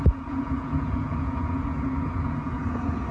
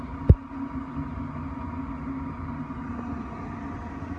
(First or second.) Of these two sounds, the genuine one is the second